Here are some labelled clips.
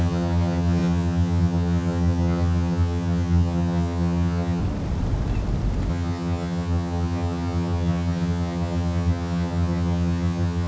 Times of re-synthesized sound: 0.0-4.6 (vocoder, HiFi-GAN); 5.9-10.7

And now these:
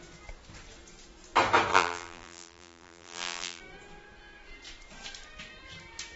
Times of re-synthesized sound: 1.7-3.6 (vocoder, BigVGAN v2)